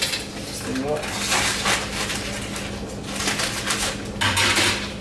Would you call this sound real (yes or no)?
yes